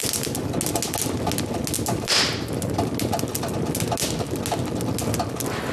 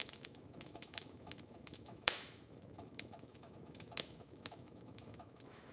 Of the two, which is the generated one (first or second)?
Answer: second